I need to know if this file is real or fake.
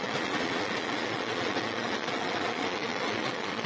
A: fake